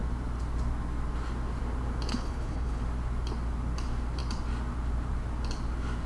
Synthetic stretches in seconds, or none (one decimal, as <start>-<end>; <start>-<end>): 2.1-2.8